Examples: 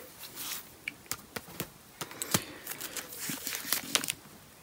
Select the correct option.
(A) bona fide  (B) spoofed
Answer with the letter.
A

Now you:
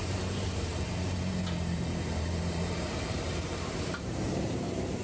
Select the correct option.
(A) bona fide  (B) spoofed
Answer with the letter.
B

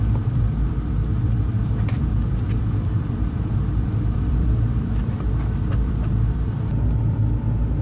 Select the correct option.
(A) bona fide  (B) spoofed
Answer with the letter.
B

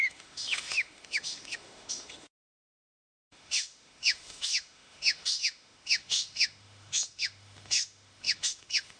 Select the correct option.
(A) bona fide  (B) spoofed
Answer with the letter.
B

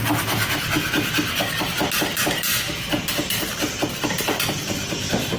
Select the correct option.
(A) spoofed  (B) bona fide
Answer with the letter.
B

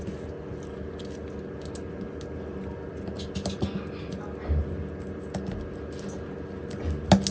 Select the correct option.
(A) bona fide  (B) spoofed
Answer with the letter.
A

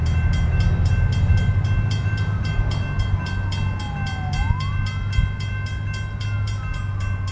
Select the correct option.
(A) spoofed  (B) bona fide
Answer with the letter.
B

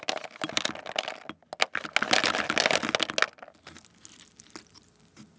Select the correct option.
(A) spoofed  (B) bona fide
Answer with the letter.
B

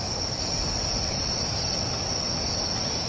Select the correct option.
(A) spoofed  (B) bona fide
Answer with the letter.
B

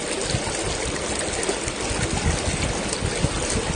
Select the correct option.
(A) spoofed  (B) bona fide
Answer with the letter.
B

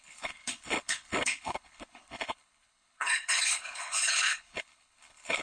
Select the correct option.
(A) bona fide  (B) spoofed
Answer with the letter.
B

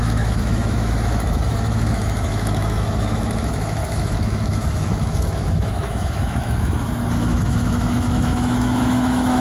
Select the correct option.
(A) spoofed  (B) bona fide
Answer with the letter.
A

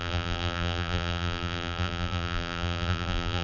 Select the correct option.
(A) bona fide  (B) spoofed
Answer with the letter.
B